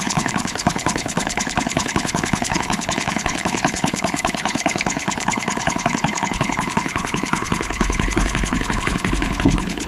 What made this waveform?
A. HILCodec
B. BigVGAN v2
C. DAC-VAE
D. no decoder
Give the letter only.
A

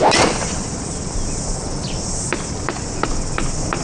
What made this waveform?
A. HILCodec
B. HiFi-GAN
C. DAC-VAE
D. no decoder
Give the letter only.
D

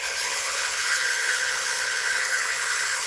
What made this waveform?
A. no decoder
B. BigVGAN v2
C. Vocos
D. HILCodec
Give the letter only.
D